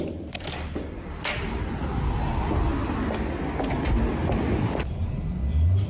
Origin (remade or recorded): recorded